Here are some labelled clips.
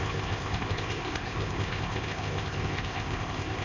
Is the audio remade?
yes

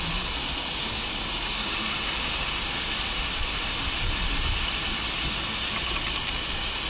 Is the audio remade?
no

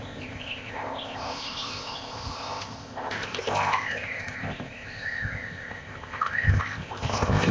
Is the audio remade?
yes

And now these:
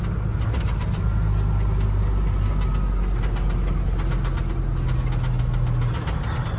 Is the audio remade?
no